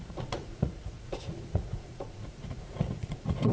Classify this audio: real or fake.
fake